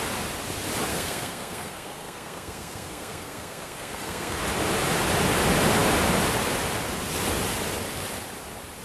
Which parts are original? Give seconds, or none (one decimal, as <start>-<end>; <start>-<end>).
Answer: 0.0-0.9; 4.4-8.8